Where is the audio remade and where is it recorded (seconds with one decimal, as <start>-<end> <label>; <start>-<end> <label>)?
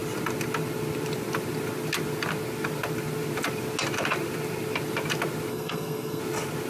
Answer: 0.0-5.5 recorded; 5.5-6.2 remade; 6.2-6.7 recorded